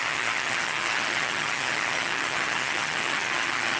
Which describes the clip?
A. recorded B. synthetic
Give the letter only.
B